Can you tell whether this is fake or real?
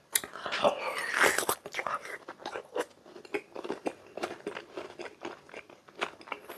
real